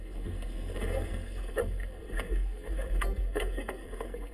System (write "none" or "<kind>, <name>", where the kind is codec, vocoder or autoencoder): codec, SNAC